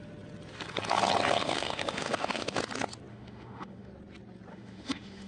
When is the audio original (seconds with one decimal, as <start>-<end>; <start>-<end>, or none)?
0.0-1.4; 2.6-3.1; 3.9-4.5